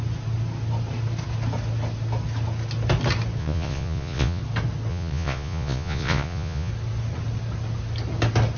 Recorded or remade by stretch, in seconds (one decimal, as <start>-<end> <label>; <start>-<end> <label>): 0.0-3.4 recorded; 3.4-4.4 remade; 4.4-4.9 recorded; 4.9-6.7 remade; 6.7-8.6 recorded